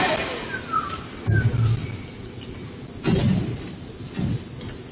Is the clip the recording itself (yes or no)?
yes